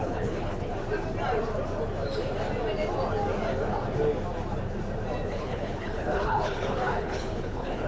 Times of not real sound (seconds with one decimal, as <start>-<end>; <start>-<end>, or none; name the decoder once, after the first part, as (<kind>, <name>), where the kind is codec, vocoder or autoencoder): 0.0-0.7 (codec, HILCodec); 5.3-7.9